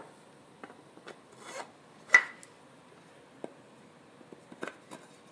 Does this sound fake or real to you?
real